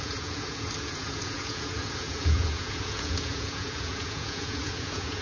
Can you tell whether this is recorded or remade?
remade